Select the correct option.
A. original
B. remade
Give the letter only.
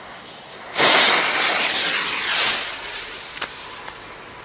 A